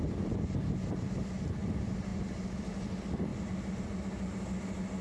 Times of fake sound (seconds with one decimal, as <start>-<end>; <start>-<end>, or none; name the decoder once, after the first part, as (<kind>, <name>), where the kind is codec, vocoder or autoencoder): none